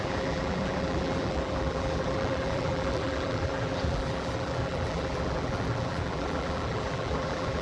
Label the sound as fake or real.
fake